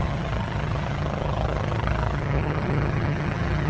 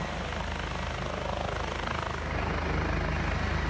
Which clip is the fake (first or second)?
first